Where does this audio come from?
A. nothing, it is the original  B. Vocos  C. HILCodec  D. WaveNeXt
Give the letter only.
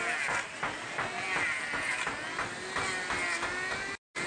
A